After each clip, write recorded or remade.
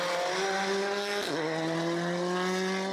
recorded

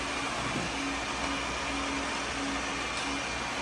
recorded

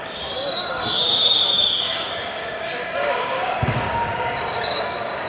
remade